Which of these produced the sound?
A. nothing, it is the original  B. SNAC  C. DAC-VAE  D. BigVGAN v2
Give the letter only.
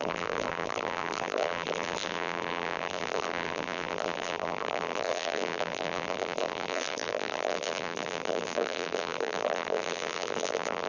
D